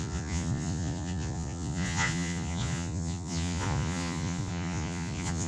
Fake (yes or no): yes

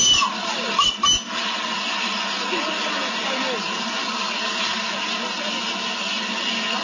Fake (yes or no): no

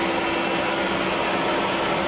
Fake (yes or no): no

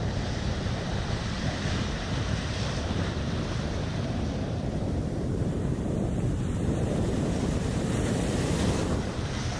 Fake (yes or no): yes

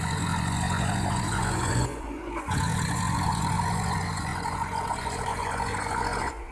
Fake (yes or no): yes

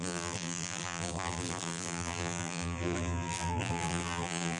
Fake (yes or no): yes